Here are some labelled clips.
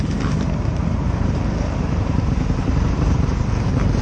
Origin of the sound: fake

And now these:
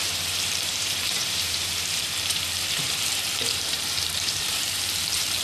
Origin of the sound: fake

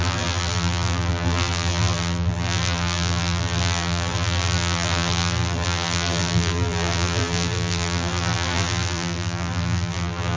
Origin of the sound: fake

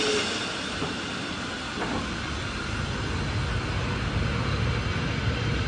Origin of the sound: real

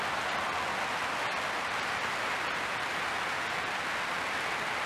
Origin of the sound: real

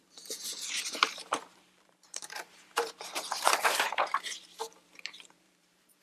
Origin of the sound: fake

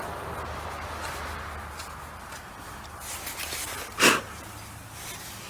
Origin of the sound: real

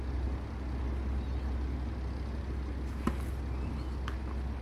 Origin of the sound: real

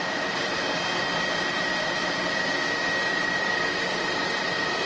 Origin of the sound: fake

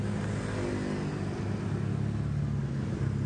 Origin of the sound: real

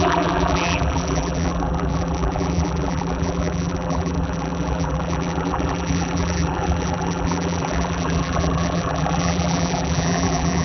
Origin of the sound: fake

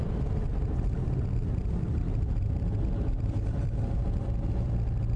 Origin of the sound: fake